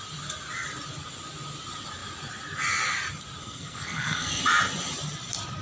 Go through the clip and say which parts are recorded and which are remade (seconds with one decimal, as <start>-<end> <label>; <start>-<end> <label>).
0.0-3.4 recorded; 3.4-4.4 remade; 4.4-5.6 recorded